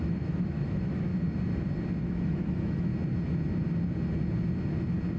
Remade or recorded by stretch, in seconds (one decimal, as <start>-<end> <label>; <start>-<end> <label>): 0.0-1.1 remade; 1.1-2.0 recorded; 2.0-2.9 remade; 2.9-5.2 recorded